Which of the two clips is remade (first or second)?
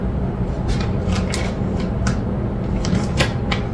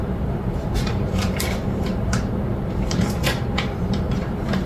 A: second